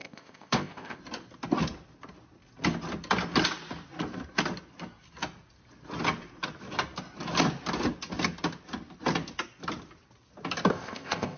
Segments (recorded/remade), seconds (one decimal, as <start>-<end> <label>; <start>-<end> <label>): 0.0-1.0 remade; 1.0-10.7 recorded; 10.7-11.4 remade